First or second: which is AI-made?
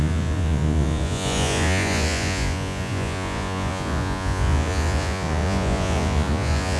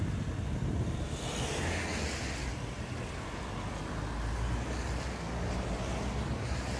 first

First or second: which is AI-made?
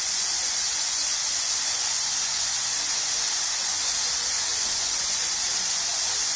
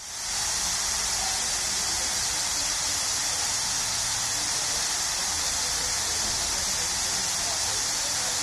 first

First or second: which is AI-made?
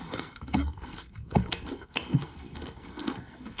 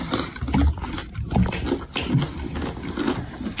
first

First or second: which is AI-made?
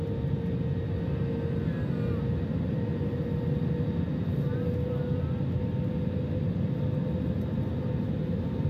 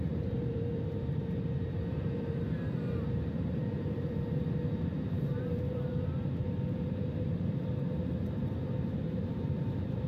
second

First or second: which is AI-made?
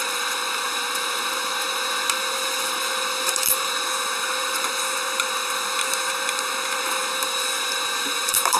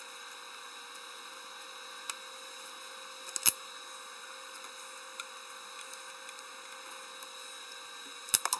first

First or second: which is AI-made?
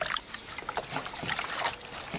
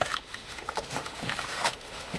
second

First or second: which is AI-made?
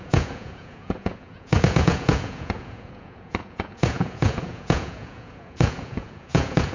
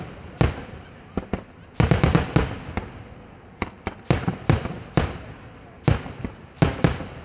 first